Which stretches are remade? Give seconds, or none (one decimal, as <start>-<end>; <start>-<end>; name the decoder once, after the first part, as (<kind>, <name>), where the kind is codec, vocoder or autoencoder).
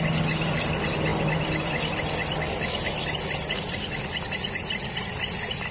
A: 1.1-1.7 (vocoder, BigVGAN v2)